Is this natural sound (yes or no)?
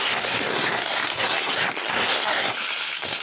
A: no